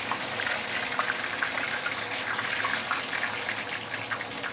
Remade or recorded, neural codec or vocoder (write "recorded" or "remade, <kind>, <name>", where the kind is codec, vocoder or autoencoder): recorded